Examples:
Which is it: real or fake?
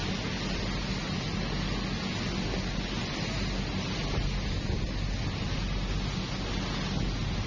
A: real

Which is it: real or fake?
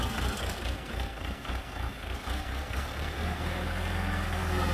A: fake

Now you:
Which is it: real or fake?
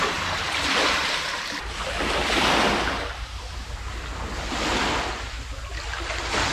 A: real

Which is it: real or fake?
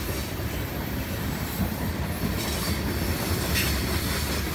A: real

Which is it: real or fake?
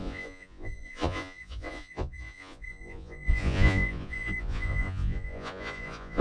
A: fake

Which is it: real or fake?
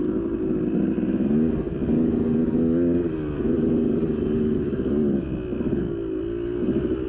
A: real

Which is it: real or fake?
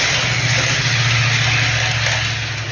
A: real